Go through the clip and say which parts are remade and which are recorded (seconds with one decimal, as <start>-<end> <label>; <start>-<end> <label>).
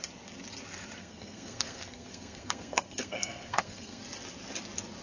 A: 0.0-1.0 recorded; 1.0-4.0 remade; 4.0-5.0 recorded